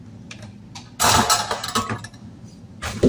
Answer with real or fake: real